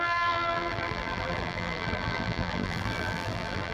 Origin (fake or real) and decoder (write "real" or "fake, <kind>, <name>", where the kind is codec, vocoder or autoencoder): fake, vocoder, BigVGAN v2